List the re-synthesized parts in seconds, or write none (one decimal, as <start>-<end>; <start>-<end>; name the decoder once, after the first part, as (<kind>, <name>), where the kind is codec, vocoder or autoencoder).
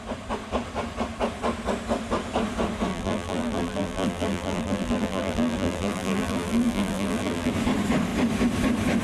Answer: 2.9-7.5 (vocoder, BigVGAN v2)